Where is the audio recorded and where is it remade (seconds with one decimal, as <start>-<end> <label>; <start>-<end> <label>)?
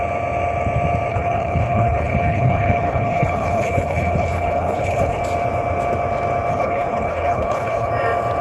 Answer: 0.0-1.1 recorded; 1.1-5.2 remade; 5.2-6.5 recorded; 6.5-7.9 remade; 7.9-8.4 recorded